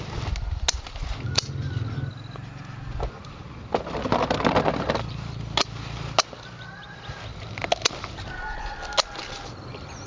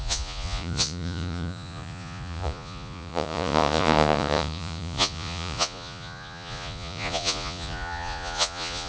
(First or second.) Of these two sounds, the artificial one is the second